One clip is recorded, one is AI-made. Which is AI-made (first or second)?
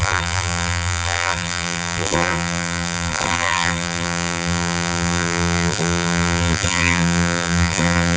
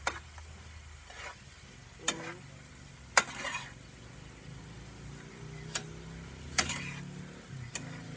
first